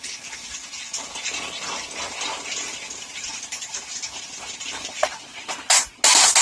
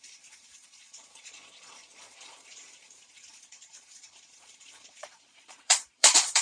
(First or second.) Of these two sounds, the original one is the first